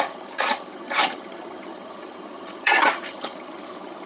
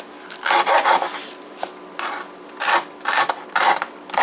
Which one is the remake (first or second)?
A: first